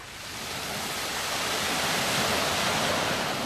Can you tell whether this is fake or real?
real